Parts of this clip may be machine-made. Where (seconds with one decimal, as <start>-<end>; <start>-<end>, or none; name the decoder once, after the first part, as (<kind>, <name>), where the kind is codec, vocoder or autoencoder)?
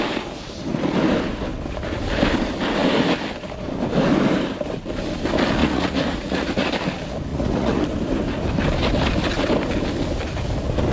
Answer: 5.6-6.7 (vocoder, Vocos); 7.3-7.8